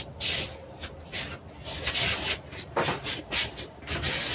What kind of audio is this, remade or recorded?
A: recorded